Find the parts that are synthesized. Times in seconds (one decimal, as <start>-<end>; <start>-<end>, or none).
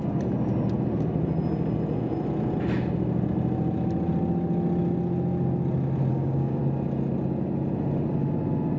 6.1-6.6